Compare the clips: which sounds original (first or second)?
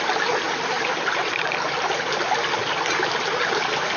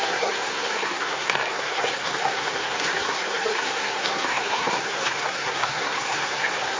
first